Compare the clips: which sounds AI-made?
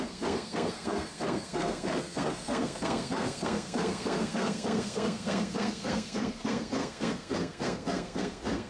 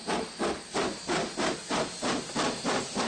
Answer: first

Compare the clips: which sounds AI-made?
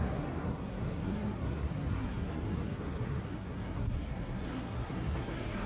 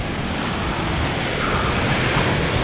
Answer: first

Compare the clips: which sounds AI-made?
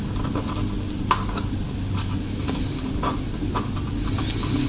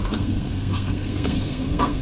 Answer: second